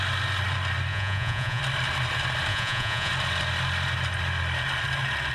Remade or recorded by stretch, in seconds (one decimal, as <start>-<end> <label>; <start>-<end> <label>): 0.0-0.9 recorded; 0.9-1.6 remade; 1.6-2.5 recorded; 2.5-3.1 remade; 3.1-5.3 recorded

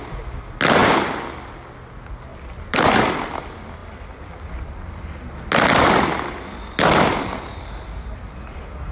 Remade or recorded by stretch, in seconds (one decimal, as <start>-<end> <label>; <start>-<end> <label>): 0.0-0.8 recorded; 0.8-1.3 remade; 1.3-2.3 recorded; 2.3-3.4 remade; 3.4-8.9 recorded

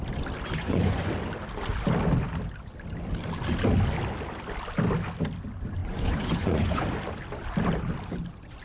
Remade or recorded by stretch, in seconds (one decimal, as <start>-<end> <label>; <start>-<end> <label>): 0.0-0.6 recorded; 0.6-1.1 remade; 1.1-5.8 recorded; 5.8-6.8 remade; 6.8-8.6 recorded